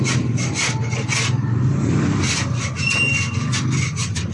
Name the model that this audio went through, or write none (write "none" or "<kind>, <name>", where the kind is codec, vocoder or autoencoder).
none